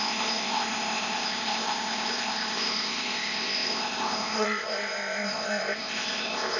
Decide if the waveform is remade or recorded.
remade